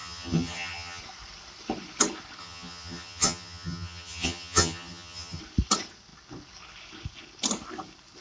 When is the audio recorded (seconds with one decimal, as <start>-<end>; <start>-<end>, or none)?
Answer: 1.0-2.4; 5.4-8.2